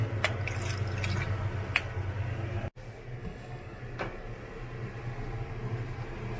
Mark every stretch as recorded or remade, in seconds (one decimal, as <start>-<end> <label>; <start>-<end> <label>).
0.0-3.2 recorded; 3.2-3.8 remade; 3.8-6.4 recorded